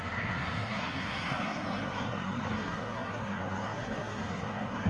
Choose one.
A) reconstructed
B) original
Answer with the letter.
A